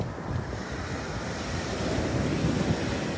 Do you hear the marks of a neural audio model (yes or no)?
no